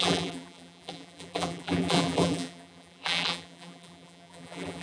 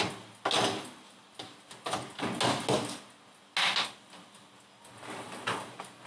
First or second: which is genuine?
second